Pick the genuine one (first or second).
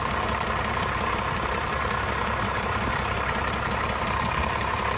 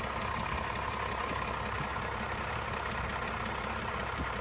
second